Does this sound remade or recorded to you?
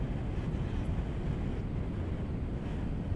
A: recorded